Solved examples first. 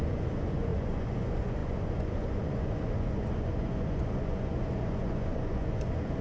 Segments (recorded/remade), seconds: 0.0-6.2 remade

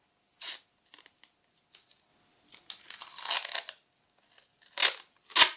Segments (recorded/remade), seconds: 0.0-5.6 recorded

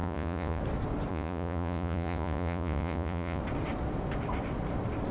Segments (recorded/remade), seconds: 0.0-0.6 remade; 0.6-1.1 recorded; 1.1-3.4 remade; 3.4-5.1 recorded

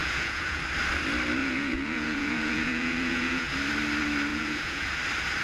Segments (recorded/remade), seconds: 0.0-0.6 remade; 0.6-1.4 recorded; 1.4-3.5 remade; 3.5-4.3 recorded; 4.3-4.9 remade; 4.9-5.4 recorded

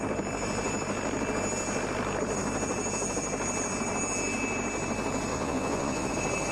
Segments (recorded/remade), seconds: 0.0-5.3 recorded; 5.3-6.1 remade; 6.1-6.5 recorded